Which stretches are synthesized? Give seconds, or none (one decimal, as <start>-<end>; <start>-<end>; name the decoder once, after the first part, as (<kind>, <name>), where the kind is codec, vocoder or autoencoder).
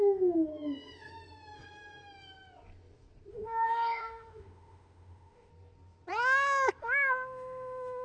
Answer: 0.0-0.5 (autoencoder, DAC-VAE); 3.3-5.5; 6.8-8.0